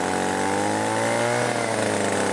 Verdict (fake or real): real